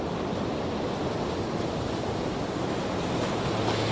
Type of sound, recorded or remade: recorded